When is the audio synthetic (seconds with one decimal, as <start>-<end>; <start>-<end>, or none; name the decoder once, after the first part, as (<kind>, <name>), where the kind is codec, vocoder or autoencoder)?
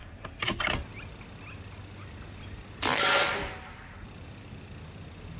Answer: none